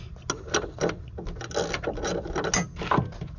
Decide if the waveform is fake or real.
real